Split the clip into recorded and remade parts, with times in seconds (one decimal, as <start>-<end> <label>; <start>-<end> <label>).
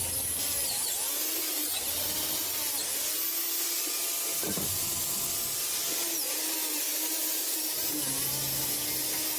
0.0-4.3 recorded; 4.3-5.3 remade; 5.3-6.9 recorded; 6.9-8.0 remade; 8.0-9.4 recorded